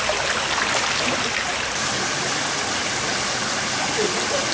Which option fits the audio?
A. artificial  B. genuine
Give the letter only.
B